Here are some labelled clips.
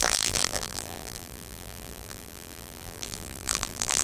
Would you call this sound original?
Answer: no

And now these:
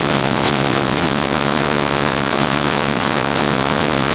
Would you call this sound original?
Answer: no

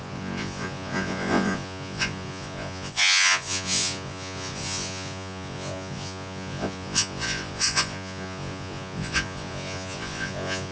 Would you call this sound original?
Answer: no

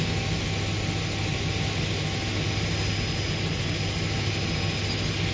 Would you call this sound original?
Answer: yes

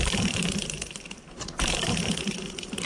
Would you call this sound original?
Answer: no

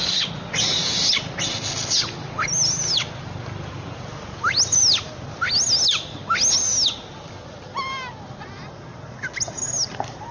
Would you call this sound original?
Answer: yes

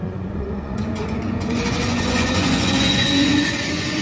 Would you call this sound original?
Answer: no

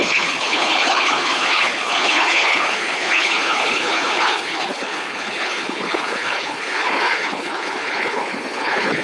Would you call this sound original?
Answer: no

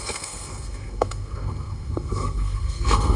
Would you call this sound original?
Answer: no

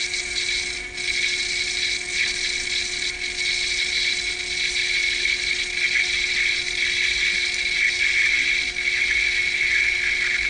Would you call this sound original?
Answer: yes